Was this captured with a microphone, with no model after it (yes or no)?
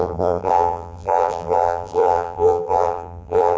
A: no